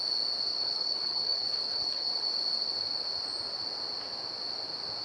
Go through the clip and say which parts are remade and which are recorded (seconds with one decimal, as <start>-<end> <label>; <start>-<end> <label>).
0.0-0.5 recorded; 0.5-2.3 remade; 2.3-5.0 recorded